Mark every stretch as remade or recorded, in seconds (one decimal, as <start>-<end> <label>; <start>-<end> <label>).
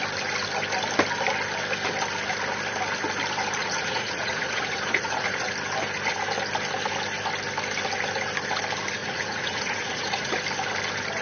0.0-3.6 recorded; 3.6-5.5 remade; 5.5-9.0 recorded; 9.0-10.4 remade; 10.4-11.2 recorded